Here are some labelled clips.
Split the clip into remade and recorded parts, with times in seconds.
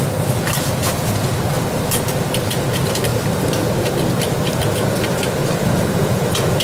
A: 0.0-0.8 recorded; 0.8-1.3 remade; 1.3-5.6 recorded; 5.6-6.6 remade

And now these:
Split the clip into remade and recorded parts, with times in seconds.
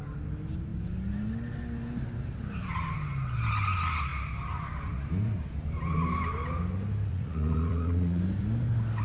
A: 0.0-7.1 recorded; 7.1-8.2 remade; 8.2-9.0 recorded